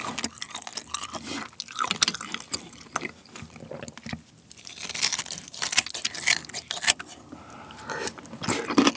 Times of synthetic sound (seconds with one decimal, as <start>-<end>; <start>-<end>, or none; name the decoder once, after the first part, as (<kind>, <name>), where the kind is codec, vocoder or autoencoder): none